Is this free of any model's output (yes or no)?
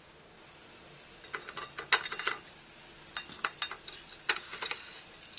yes